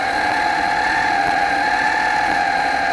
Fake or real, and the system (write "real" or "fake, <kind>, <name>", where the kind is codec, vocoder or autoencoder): fake, vocoder, Vocos